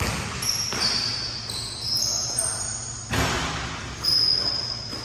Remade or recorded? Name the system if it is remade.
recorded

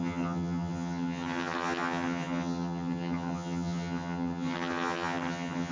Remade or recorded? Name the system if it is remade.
remade, vocoder, HiFi-GAN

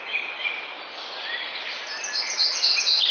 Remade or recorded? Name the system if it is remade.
recorded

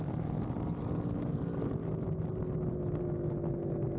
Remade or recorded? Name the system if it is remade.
recorded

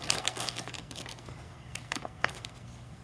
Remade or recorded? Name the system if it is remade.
remade, codec, SNAC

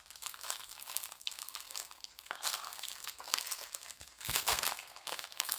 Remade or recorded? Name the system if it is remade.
remade, codec, SNAC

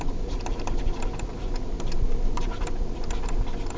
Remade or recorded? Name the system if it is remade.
remade, vocoder, BigVGAN v2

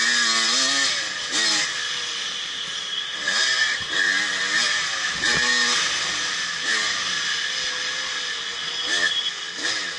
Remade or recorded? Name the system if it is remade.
recorded